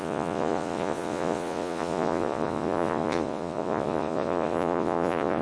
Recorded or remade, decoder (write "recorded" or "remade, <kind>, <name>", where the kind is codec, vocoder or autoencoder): remade, vocoder, Vocos